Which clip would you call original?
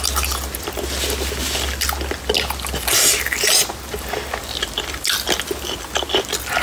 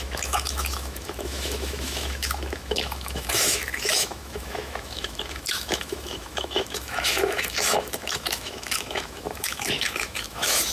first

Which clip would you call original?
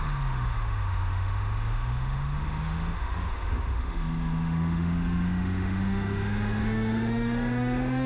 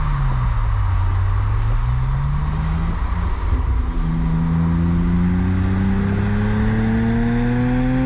second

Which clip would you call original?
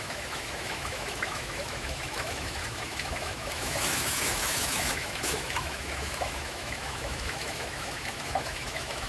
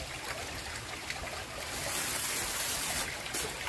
second